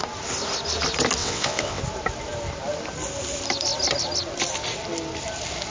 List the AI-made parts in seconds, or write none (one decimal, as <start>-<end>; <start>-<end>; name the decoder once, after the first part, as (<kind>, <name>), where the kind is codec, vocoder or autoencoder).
1.2-1.8 (vocoder, WaveNeXt)